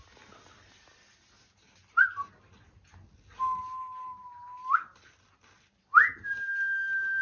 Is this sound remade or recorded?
recorded